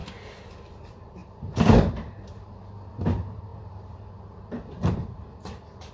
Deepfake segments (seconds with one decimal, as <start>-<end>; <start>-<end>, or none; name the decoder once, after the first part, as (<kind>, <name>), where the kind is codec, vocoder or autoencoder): 0.7-5.9 (vocoder, BigVGAN v2)